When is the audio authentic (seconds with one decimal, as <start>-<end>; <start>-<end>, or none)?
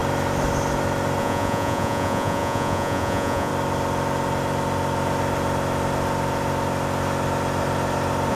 0.0-1.2; 3.5-8.3